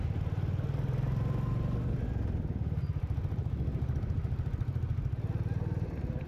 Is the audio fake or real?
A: real